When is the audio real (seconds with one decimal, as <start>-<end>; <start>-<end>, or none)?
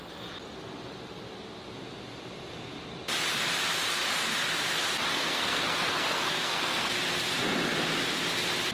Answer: 0.0-5.1; 6.9-8.7